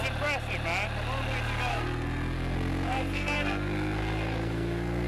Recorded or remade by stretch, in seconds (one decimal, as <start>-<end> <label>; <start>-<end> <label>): 0.0-1.7 recorded; 1.7-5.1 remade